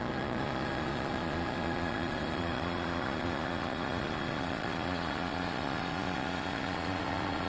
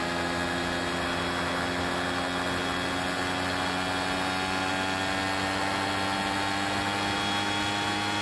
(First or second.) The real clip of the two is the second